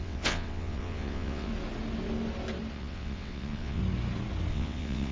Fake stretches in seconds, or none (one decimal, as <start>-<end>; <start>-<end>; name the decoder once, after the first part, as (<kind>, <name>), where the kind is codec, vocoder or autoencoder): 0.0-1.5 (vocoder, WaveNeXt); 2.7-3.8; 4.5-5.1